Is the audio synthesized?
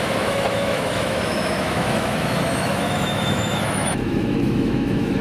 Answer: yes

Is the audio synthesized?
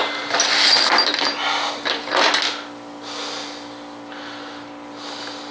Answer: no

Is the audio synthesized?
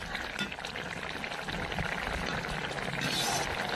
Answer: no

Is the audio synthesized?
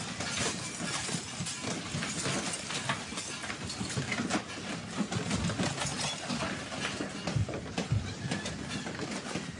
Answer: no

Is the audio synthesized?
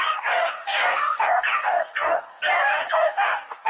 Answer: yes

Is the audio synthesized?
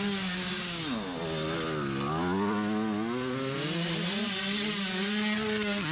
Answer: no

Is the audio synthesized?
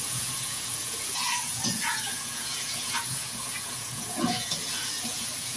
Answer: yes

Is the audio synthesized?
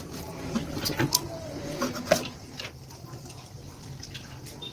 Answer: yes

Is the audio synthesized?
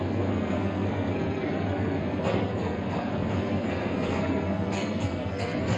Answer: yes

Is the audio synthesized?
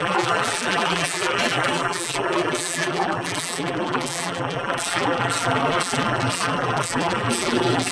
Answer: yes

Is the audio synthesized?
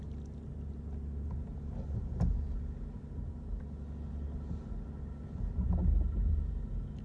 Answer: no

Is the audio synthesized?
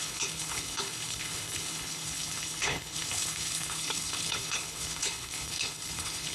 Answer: yes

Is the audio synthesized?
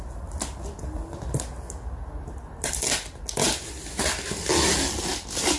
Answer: no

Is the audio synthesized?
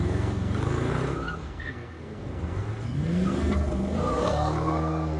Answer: yes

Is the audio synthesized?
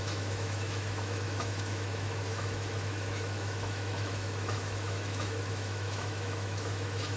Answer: yes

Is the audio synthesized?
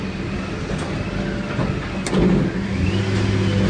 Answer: no